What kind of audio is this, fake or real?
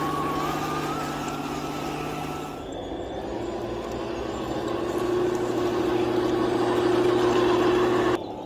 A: real